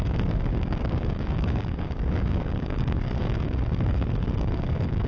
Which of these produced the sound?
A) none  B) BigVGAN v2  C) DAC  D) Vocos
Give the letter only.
C